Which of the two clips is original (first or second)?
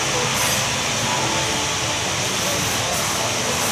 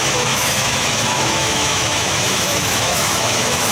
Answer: first